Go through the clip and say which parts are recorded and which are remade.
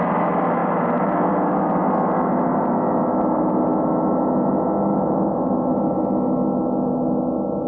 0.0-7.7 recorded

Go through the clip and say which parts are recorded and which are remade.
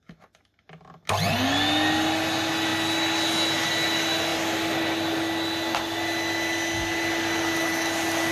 0.0-8.3 recorded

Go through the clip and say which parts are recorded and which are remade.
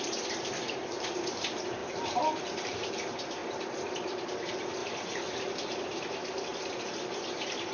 0.0-3.4 remade; 3.4-4.3 recorded; 4.3-6.5 remade; 6.5-7.1 recorded; 7.1-7.7 remade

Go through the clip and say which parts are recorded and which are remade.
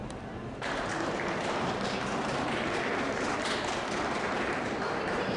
0.0-0.5 recorded; 0.5-2.9 remade; 2.9-3.7 recorded; 3.7-5.4 remade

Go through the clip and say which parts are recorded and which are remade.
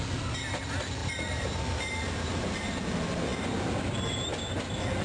0.0-1.0 recorded; 1.0-2.7 remade; 2.7-5.0 recorded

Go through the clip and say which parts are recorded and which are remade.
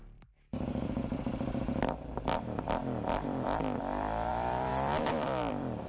0.0-5.9 remade